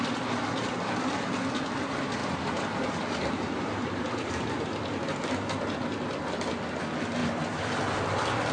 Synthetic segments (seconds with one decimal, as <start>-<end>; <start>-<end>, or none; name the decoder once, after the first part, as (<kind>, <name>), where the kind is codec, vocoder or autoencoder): 2.2-4.5 (vocoder, BigVGAN v2)